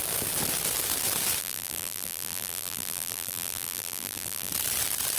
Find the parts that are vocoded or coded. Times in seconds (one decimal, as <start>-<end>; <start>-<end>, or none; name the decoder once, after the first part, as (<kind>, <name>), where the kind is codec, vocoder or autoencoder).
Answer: 1.4-4.5 (vocoder, BigVGAN v2)